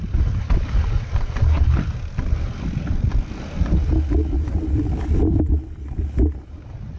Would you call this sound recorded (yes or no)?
yes